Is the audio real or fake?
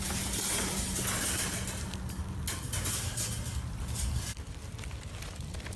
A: real